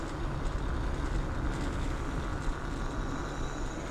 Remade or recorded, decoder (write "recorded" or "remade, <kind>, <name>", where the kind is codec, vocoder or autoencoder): recorded